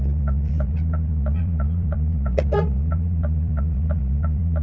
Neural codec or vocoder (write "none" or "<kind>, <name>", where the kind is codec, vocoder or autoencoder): vocoder, Vocos